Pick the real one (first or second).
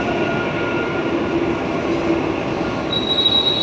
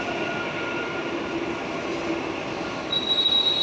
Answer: first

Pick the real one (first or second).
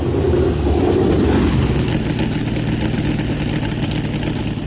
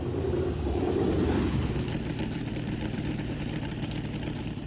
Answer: first